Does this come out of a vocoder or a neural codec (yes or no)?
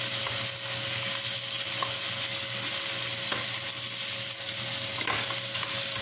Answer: no